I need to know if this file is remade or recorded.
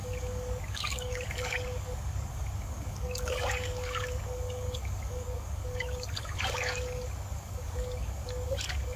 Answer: remade